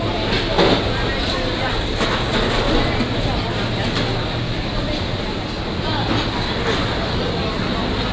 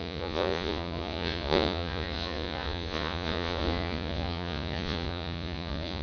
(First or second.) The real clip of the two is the first